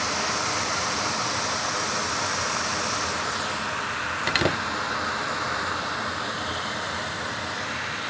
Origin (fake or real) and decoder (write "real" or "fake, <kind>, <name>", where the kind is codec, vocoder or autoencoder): fake, vocoder, BigVGAN v2